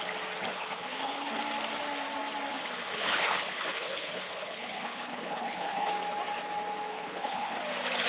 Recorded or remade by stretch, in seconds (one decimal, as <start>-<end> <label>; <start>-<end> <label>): 0.0-0.5 recorded; 0.5-1.4 remade; 1.4-2.5 recorded; 2.5-5.9 remade; 5.9-6.9 recorded; 6.9-7.6 remade; 7.6-8.1 recorded